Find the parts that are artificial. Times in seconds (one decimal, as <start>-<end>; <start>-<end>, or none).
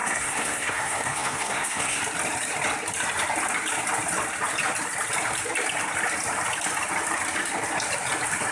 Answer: 0.0-2.0